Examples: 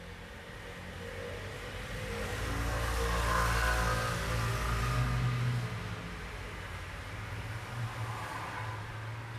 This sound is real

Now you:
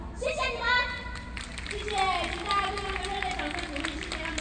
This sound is real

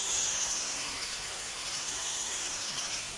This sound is fake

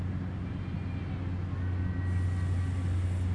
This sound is real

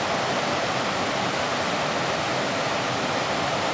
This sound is real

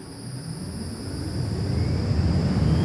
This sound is real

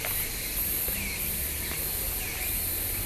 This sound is real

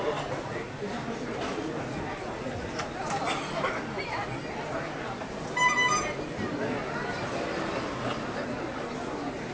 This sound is real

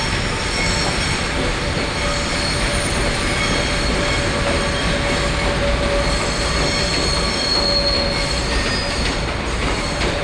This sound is real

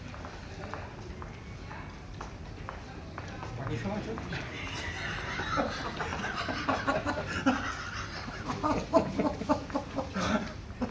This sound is real